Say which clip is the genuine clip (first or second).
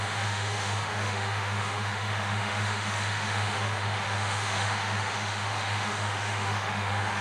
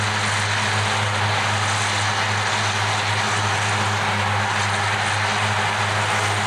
second